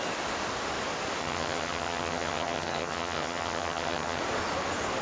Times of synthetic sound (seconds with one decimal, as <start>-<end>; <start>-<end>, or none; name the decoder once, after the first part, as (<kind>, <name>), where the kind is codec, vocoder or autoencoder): 1.2-4.2 (vocoder, HiFi-GAN)